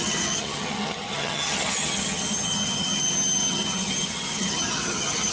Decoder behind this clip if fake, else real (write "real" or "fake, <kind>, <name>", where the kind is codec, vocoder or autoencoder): fake, vocoder, HiFi-GAN